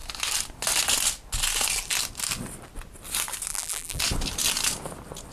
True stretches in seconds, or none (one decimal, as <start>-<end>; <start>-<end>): 0.0-3.5; 4.0-5.3